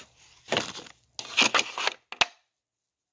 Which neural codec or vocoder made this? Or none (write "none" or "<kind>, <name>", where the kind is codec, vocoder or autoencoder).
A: none